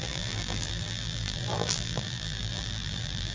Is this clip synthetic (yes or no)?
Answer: yes